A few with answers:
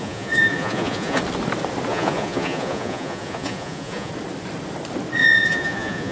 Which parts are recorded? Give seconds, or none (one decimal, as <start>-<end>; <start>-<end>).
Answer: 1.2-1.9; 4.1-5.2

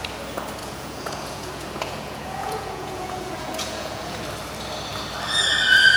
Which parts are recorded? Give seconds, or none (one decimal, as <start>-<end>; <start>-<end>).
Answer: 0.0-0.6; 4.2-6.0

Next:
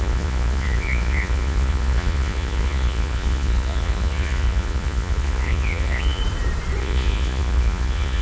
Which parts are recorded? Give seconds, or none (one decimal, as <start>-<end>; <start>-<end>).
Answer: 6.2-6.8